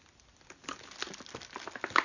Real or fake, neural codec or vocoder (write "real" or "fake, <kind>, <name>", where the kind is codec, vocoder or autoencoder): real